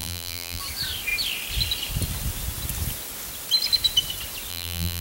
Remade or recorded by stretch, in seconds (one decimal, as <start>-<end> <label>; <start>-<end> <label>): 0.0-0.6 remade; 0.6-4.5 recorded; 4.5-5.0 remade